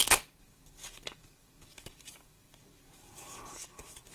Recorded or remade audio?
remade